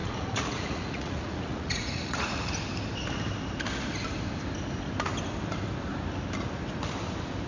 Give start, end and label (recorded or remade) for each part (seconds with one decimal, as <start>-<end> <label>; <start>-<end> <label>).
0.0-2.6 remade; 2.6-7.5 recorded